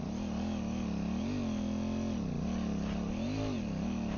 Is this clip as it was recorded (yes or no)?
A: yes